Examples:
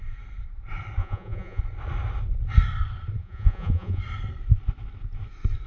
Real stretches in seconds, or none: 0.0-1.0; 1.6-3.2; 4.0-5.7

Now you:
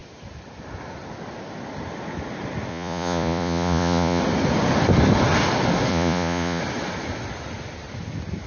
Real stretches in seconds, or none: 0.0-2.7; 4.2-5.9; 6.6-8.5

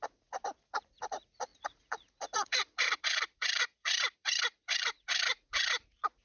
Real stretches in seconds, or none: none

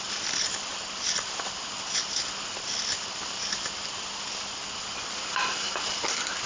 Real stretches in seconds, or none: 0.0-6.5

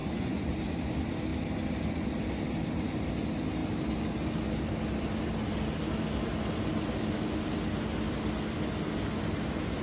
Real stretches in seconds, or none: 0.6-9.8

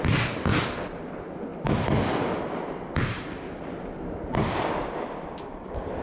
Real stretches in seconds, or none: 0.0-6.0

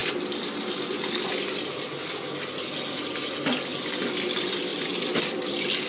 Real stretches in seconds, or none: 0.0-5.9

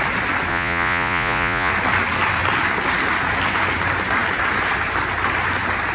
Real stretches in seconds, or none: 0.0-0.5; 1.7-5.9